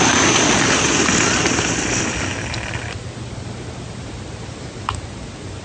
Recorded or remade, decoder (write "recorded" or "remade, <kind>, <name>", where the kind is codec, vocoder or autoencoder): recorded